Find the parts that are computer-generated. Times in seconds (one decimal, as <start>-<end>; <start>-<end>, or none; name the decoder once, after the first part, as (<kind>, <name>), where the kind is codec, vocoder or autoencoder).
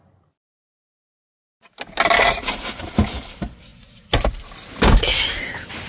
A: none